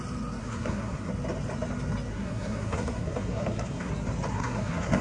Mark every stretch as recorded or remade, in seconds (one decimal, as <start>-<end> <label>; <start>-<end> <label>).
0.0-0.4 recorded; 0.4-1.1 remade; 1.1-2.1 recorded; 2.1-3.9 remade; 3.9-4.3 recorded; 4.3-5.0 remade